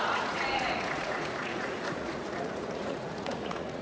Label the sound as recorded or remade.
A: remade